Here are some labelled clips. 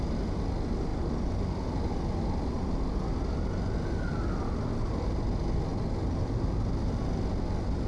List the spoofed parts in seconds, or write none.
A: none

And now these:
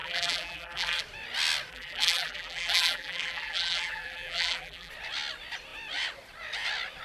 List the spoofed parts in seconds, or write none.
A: 0.0-1.0 (vocoder, BigVGAN v2); 1.7-4.9